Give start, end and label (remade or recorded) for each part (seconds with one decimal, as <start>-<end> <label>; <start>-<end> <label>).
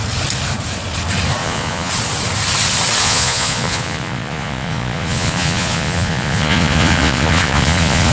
0.0-1.4 recorded; 1.4-1.9 remade; 1.9-3.0 recorded; 3.0-8.1 remade